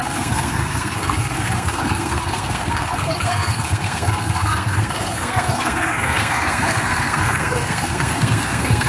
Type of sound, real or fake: fake